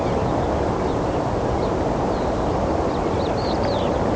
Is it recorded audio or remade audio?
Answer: recorded